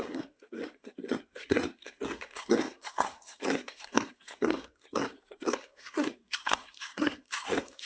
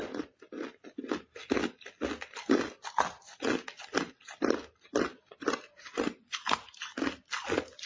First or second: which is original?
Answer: second